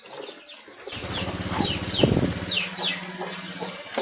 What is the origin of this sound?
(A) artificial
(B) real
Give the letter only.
B